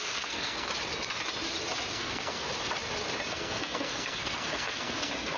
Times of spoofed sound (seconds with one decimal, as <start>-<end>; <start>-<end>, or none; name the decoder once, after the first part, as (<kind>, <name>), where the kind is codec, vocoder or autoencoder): 0.0-0.7 (codec, SNAC); 1.9-2.5; 3.3-5.4